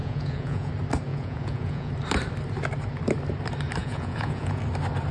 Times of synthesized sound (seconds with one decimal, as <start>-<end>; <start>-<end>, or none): 0.0-0.7; 1.1-1.9; 3.8-4.6